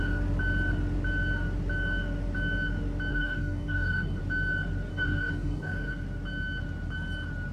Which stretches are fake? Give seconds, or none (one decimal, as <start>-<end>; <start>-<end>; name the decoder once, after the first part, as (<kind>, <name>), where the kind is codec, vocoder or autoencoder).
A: 3.1-4.2 (codec, DAC); 4.9-5.9